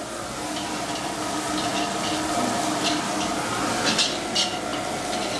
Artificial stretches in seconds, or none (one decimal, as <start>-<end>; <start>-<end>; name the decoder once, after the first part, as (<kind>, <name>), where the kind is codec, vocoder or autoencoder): none

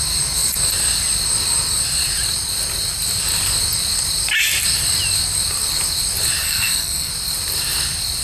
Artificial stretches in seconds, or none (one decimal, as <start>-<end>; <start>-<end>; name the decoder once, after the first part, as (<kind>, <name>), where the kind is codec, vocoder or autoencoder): 6.4-7.1 (codec, SNAC)

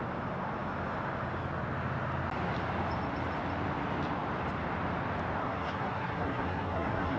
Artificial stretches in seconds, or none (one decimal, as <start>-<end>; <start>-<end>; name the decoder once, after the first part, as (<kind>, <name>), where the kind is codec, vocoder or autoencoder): 5.4-7.2 (codec, SNAC)

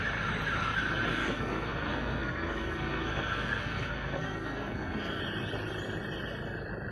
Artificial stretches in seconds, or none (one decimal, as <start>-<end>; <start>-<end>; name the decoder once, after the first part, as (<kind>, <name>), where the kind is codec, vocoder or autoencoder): 1.1-5.2 (codec, SNAC)

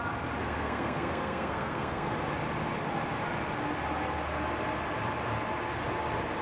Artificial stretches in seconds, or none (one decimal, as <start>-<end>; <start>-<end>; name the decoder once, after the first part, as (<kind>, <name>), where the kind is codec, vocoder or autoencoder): 0.4-2.1 (codec, SNAC)

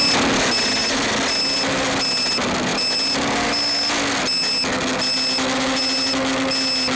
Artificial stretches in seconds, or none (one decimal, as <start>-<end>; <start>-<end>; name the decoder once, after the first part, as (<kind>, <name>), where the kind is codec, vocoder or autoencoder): none

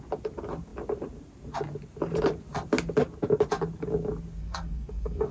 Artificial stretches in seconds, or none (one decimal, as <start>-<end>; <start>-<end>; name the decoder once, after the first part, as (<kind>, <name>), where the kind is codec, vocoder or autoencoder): 4.4-5.3 (codec, SNAC)

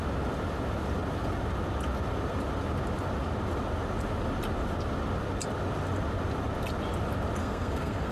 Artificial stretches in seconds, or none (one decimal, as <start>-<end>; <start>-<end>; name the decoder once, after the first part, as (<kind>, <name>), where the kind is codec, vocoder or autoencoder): 7.4-8.1 (codec, SNAC)